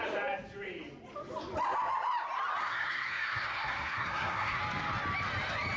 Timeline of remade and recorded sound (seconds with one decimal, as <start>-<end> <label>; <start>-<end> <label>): 0.0-2.6 recorded; 2.6-4.6 remade; 4.6-5.8 recorded